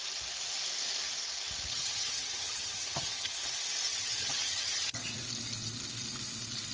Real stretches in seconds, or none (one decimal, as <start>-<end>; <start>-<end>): 0.0-1.7; 3.3-3.9; 5.1-6.7